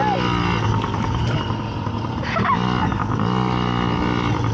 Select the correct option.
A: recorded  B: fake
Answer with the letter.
A